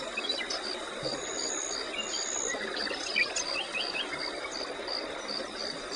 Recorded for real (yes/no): yes